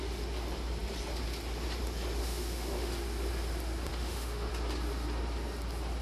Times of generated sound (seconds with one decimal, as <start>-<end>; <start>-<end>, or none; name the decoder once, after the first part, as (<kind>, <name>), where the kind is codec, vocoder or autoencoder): 2.2-2.9 (autoencoder, DAC-VAE); 3.9-4.5